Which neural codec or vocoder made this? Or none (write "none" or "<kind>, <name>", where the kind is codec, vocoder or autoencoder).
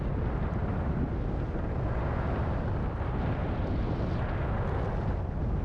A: none